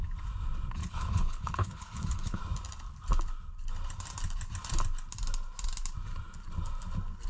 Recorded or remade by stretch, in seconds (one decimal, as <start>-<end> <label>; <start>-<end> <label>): 0.0-0.8 recorded; 0.8-2.4 remade; 2.4-7.3 recorded